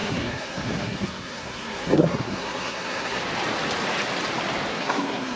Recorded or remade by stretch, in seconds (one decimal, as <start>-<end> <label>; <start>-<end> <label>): 0.0-3.2 remade; 3.2-4.7 recorded; 4.7-5.4 remade